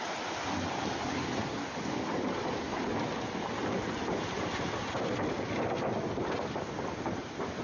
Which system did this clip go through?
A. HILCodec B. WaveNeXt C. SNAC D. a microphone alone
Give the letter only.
D